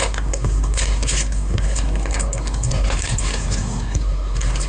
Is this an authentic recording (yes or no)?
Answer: no